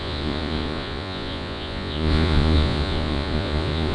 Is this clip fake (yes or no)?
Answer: yes